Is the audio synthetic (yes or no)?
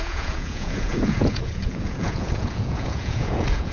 yes